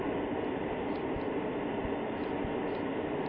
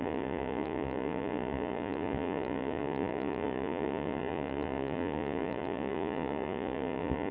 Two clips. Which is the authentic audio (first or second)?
first